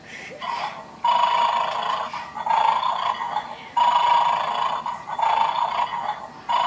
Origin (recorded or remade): recorded